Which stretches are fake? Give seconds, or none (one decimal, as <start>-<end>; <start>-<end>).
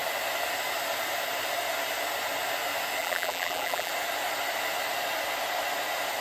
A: 3.0-3.9